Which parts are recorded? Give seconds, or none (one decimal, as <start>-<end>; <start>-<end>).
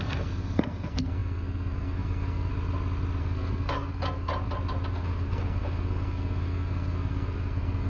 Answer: 2.5-3.2; 4.3-4.9